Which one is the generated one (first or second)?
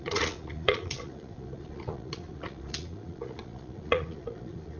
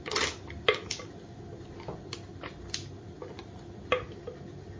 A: first